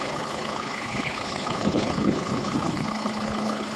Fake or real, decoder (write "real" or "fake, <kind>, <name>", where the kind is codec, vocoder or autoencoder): fake, codec, HILCodec